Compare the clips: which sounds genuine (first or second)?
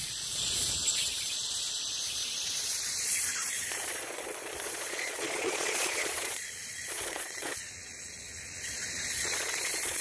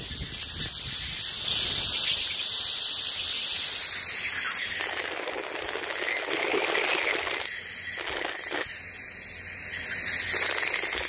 second